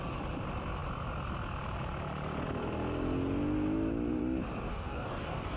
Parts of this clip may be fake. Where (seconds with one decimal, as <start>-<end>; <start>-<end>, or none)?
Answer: 4.7-5.6